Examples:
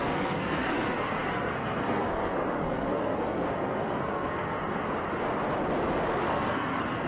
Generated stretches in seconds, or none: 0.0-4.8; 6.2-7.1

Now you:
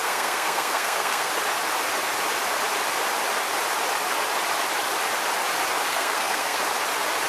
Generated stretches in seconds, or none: 0.0-1.3; 5.9-6.6